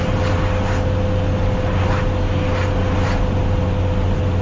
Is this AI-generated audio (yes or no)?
no